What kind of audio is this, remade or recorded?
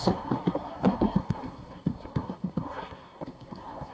remade